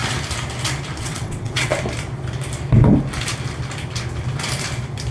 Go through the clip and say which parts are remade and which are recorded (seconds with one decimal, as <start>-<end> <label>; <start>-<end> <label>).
0.0-1.0 recorded; 1.0-1.7 remade; 1.7-5.1 recorded